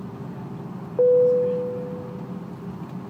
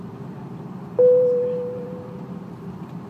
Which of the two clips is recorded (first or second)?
first